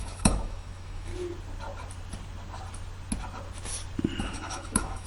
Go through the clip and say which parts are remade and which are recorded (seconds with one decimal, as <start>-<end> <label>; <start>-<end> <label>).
0.0-1.1 remade; 1.1-4.2 recorded; 4.2-5.1 remade